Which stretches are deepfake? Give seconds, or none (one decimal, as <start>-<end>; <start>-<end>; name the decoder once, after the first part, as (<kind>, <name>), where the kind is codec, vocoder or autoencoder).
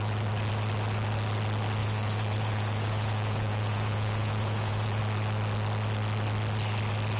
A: 1.8-5.0 (vocoder, Vocos)